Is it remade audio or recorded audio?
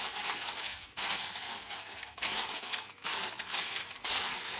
remade